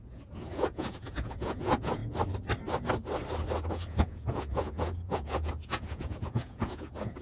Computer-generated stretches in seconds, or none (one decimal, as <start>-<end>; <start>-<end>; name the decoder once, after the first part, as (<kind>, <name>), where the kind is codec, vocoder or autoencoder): 0.0-2.0 (vocoder, Vocos); 3.7-7.2